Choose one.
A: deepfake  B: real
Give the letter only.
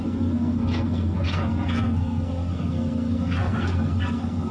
A